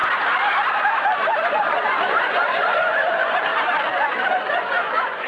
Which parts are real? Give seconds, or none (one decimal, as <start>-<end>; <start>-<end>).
0.0-1.3; 3.5-4.3